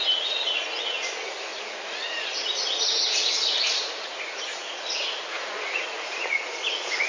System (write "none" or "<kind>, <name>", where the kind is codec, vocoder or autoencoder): vocoder, Vocos